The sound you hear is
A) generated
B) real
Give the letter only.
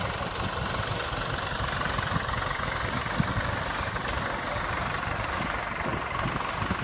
B